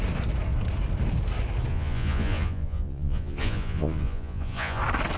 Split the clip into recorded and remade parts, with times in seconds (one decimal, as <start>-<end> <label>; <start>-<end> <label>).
0.0-1.7 recorded; 1.7-4.8 remade; 4.8-5.2 recorded